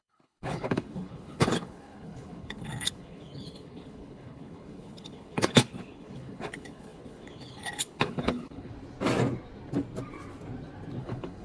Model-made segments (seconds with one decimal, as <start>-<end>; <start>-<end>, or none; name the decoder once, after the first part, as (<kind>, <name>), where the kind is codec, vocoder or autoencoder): 0.0-8.7 (codec, HILCodec); 11.0-11.4